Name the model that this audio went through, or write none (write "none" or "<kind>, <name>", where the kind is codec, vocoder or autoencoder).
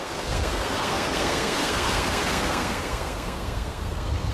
codec, SNAC